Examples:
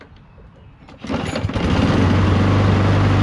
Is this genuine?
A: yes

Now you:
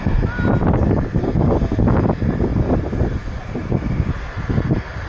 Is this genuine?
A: yes